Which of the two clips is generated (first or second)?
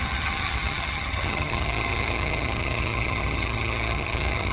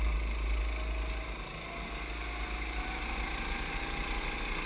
first